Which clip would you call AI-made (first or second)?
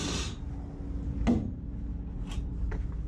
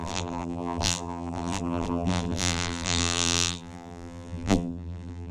second